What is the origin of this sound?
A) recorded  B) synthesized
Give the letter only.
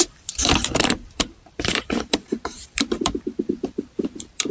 B